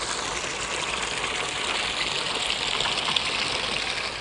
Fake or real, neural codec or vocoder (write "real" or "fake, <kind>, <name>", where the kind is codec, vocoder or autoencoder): real